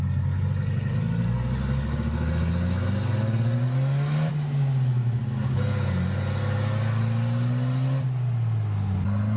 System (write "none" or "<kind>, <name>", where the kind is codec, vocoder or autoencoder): none